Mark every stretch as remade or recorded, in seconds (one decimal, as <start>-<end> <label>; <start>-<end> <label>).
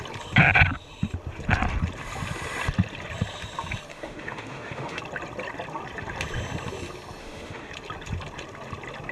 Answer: 0.0-3.9 recorded; 3.9-5.0 remade; 5.0-7.2 recorded; 7.2-7.7 remade; 7.7-9.1 recorded